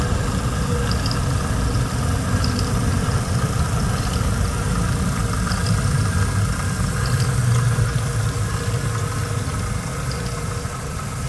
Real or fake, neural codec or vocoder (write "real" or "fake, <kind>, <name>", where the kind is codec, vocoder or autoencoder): real